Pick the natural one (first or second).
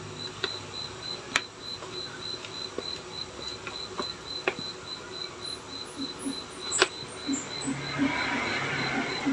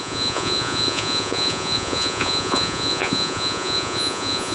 first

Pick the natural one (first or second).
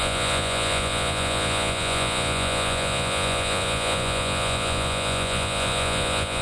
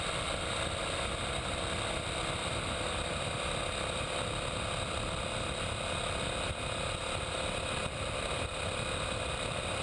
second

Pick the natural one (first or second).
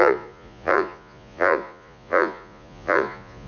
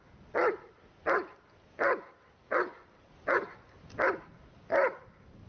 second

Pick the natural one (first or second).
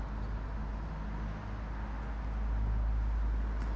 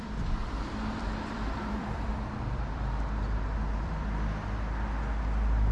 first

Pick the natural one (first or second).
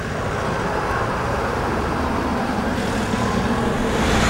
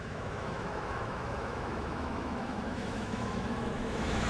first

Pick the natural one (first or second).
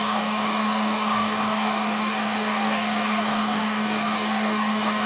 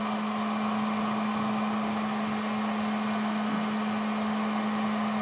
second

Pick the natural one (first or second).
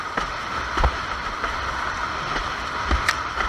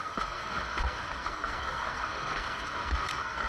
first